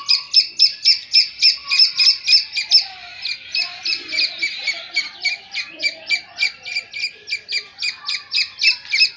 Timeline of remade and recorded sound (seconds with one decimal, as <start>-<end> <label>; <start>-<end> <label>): 0.0-9.2 recorded

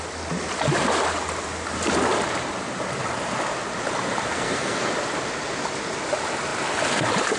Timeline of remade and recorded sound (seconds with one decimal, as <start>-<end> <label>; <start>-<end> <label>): 0.0-4.3 recorded; 4.3-4.9 remade; 4.9-7.4 recorded

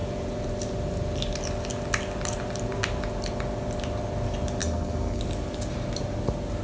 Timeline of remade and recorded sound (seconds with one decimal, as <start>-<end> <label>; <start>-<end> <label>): 0.0-4.6 recorded; 4.6-5.2 remade; 5.2-6.6 recorded

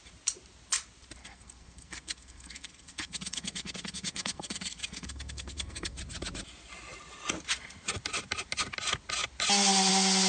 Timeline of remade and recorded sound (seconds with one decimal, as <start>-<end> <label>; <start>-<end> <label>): 0.0-1.2 recorded; 1.2-6.0 remade; 6.0-10.3 recorded

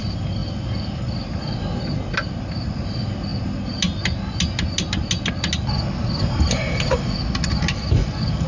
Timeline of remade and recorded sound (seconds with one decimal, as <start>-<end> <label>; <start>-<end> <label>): 0.0-8.5 recorded

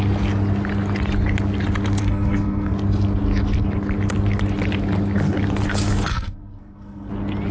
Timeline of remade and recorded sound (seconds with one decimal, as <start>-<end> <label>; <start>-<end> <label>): 0.0-2.0 recorded; 2.0-2.7 remade; 2.7-6.1 recorded; 6.1-7.1 remade; 7.1-7.5 recorded

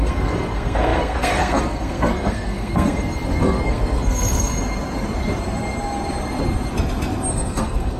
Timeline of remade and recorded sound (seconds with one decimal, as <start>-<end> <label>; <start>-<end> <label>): 0.0-4.5 remade; 4.5-7.3 recorded; 7.3-8.0 remade

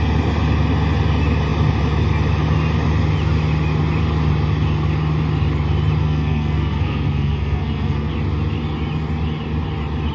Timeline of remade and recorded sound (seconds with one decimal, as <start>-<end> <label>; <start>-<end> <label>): 0.0-6.0 recorded; 6.0-8.1 remade; 8.1-10.1 recorded